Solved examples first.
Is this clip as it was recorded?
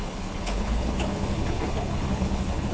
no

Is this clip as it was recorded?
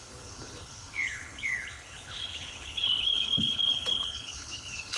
no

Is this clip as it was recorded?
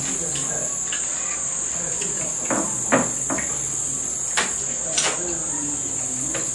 yes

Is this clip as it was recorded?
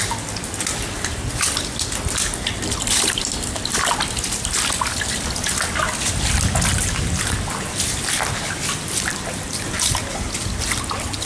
yes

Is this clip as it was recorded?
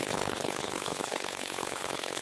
no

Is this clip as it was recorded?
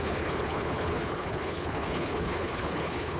no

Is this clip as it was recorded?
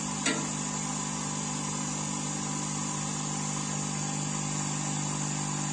yes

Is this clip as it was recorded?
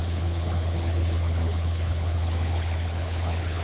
no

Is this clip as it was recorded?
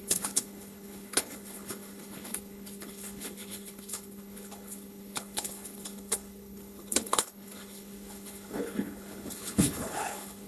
no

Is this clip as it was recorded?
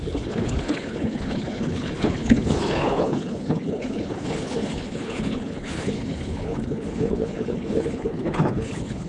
no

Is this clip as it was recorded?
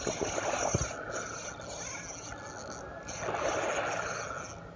yes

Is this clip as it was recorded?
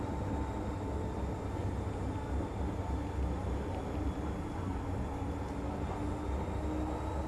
yes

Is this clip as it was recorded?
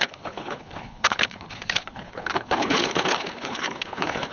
no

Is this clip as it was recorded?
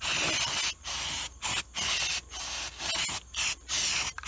yes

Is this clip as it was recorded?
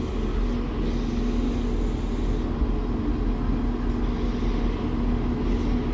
yes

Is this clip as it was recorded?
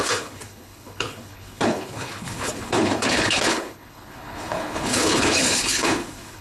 no